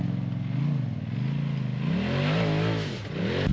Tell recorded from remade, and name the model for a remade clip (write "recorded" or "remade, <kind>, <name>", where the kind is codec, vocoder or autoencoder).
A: recorded